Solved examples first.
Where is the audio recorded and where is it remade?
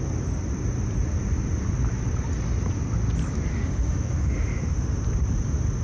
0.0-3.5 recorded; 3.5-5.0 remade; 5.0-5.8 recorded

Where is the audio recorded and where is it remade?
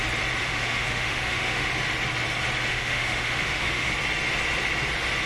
0.0-0.4 recorded; 0.4-1.7 remade; 1.7-2.7 recorded; 2.7-3.9 remade; 3.9-5.3 recorded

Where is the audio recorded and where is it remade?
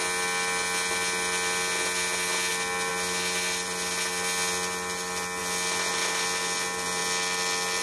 0.0-7.8 recorded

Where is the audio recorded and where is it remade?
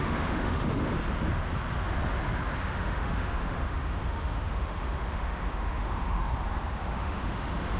0.0-0.9 remade; 0.9-2.6 recorded; 2.6-6.3 remade; 6.3-6.8 recorded; 6.8-7.8 remade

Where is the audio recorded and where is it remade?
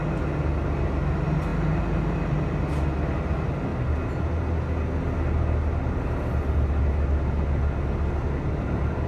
0.0-9.1 recorded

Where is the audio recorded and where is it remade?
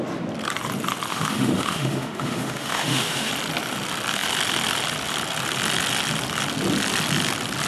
0.0-1.1 recorded; 1.1-3.3 remade; 3.3-7.7 recorded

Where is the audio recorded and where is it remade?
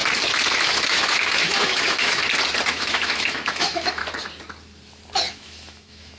0.0-0.6 recorded; 0.6-2.2 remade; 2.2-2.7 recorded; 2.7-4.0 remade; 4.0-5.3 recorded; 5.3-6.2 remade